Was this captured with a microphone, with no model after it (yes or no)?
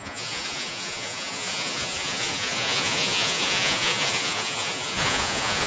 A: no